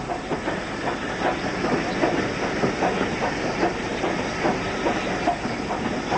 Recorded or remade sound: recorded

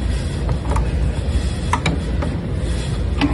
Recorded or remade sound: recorded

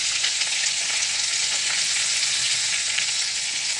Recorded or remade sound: remade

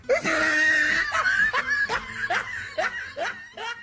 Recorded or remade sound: recorded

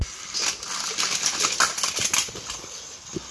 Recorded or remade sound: recorded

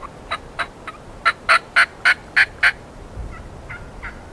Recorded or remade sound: recorded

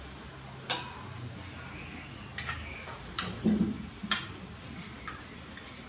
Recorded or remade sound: recorded